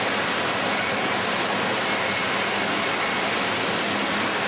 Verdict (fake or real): real